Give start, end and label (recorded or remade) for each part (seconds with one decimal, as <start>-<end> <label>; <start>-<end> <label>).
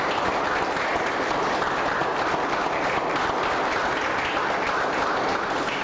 0.0-5.8 recorded